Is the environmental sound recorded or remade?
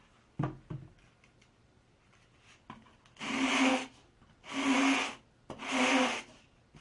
recorded